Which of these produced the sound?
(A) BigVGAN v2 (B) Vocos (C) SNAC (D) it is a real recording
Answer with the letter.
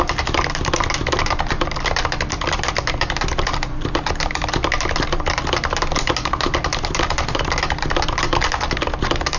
D